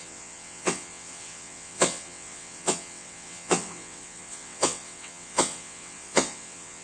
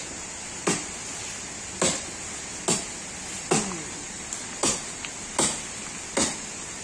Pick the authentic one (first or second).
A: second